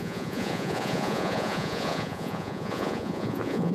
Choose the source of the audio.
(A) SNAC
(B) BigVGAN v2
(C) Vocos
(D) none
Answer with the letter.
C